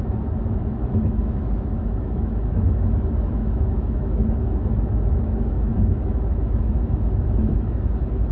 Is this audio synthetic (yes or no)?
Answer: yes